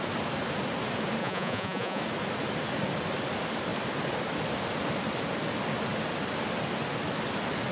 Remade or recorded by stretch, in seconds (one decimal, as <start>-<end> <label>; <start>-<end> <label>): 0.0-1.2 recorded; 1.2-2.0 remade; 2.0-7.7 recorded